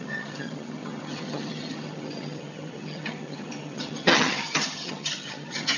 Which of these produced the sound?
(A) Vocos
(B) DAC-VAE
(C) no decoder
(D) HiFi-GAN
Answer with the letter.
D